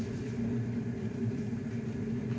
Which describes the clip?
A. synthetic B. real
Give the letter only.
A